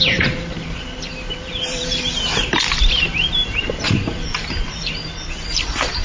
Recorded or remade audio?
remade